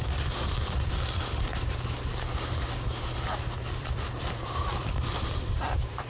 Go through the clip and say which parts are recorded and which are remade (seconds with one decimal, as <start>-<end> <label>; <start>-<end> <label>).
0.0-1.5 remade; 1.5-3.8 recorded; 3.8-6.1 remade